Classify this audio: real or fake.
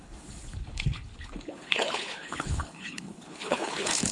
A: fake